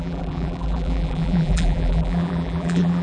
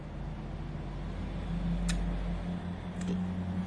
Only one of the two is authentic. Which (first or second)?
second